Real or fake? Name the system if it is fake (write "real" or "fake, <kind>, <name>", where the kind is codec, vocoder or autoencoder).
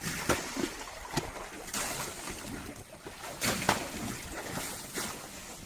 real